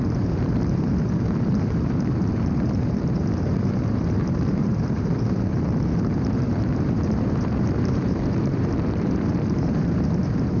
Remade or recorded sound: remade